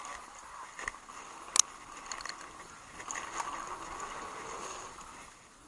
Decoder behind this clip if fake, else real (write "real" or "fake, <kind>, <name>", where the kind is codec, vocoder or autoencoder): real